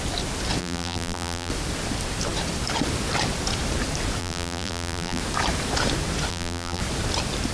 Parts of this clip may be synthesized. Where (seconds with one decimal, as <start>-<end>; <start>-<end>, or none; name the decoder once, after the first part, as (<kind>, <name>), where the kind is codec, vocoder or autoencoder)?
0.6-1.5 (vocoder, BigVGAN v2); 4.2-5.2; 6.3-6.8